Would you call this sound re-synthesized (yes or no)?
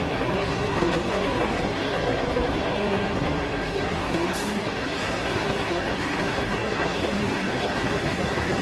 yes